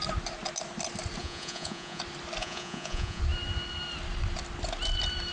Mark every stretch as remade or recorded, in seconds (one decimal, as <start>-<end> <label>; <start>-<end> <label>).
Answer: 0.0-1.2 recorded; 1.2-2.0 remade; 2.0-2.4 recorded; 2.4-3.2 remade; 3.2-5.3 recorded